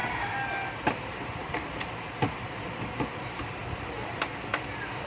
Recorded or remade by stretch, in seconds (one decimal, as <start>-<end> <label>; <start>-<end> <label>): 0.0-5.1 recorded